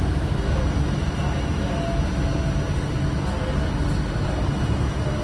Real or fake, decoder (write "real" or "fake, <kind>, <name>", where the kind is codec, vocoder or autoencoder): real